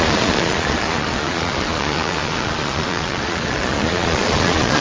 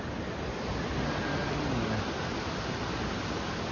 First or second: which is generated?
first